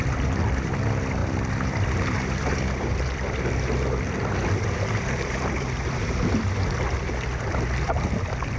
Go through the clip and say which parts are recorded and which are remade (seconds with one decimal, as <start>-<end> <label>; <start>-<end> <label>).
0.0-8.6 remade